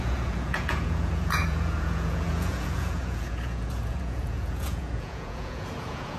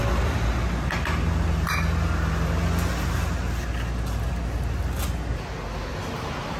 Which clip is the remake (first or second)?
first